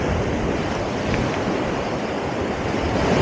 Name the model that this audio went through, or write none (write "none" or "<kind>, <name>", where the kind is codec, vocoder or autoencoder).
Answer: none